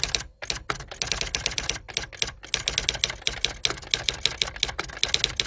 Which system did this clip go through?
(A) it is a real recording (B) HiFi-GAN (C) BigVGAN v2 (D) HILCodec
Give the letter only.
A